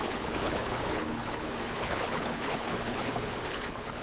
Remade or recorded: remade